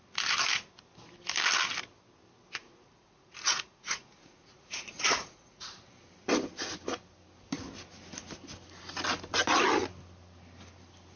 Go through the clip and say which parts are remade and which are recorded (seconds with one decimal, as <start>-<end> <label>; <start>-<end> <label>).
0.0-2.6 recorded; 2.6-5.8 remade; 5.8-11.2 recorded